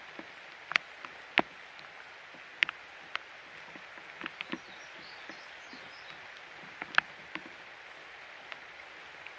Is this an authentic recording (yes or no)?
yes